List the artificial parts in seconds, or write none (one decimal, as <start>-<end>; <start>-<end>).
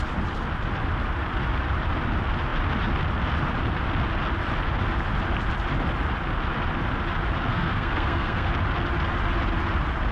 7.5-8.5